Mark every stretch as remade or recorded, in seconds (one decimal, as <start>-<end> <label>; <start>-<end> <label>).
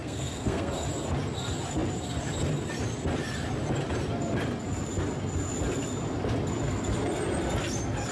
0.0-0.7 remade; 0.7-8.1 recorded